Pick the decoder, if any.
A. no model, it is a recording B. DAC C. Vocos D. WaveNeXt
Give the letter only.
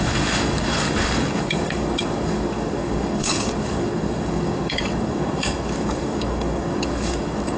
B